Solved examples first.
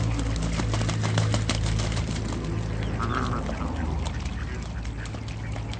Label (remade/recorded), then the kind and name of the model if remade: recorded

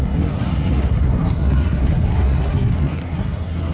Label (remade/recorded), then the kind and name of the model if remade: remade, codec, SNAC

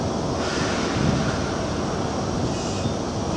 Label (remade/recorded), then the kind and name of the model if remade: recorded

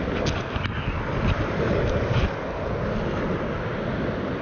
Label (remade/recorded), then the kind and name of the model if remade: recorded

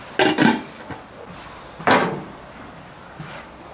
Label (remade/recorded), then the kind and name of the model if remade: recorded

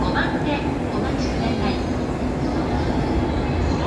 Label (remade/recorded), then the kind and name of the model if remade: recorded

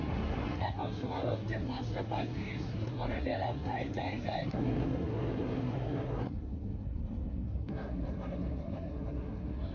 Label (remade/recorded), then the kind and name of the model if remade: remade, codec, SNAC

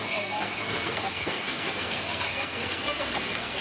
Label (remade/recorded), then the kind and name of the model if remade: remade, codec, SNAC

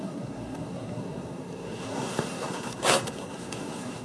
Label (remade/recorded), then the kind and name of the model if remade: remade, codec, SNAC